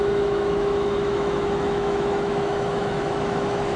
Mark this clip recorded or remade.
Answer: remade